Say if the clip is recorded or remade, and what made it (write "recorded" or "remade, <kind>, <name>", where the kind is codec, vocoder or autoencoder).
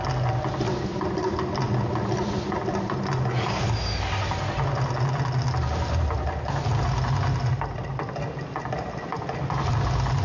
recorded